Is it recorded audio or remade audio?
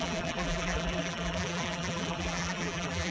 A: remade